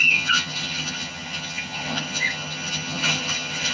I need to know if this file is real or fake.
fake